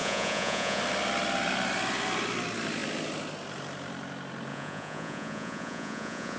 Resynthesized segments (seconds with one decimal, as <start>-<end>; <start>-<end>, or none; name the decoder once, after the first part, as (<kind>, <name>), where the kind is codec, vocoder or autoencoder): 0.0-0.8 (vocoder, Vocos); 4.5-6.4